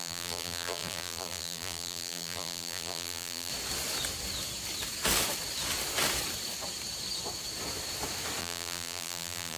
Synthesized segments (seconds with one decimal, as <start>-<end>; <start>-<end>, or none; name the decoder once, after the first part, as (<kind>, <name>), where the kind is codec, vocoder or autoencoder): 0.0-3.5 (vocoder, BigVGAN v2); 8.4-9.6